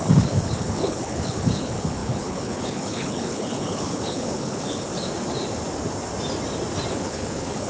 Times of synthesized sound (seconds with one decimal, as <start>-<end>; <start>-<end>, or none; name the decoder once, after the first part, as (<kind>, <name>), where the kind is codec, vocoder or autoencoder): 0.0-4.9 (codec, HILCodec); 6.9-7.7